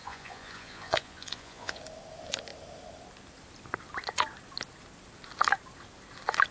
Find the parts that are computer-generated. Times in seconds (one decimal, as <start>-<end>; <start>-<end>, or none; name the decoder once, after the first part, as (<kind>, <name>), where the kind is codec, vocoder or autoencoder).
0.0-1.8 (vocoder, Vocos)